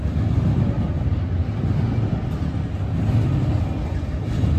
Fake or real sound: real